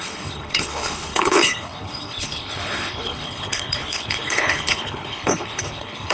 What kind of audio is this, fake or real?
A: fake